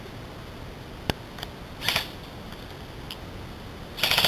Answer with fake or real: real